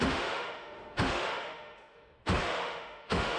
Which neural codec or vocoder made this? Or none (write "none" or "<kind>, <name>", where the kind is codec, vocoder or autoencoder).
autoencoder, DAC-VAE